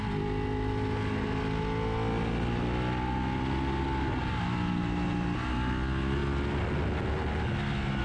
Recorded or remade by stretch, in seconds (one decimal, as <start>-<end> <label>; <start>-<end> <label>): 0.0-8.0 recorded